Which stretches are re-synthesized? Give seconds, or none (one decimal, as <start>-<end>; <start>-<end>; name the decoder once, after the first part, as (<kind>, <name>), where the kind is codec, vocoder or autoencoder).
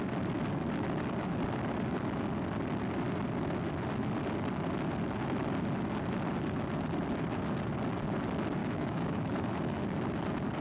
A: 8.6-9.8 (autoencoder, DAC-VAE)